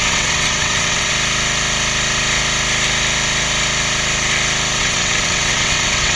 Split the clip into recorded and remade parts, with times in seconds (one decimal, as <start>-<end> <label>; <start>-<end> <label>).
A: 0.0-1.1 remade; 1.1-4.8 recorded; 4.8-6.2 remade